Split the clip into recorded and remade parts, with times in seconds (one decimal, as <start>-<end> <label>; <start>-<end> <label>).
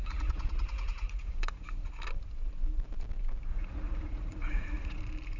0.0-1.9 remade; 1.9-3.5 recorded; 3.5-5.0 remade; 5.0-5.4 recorded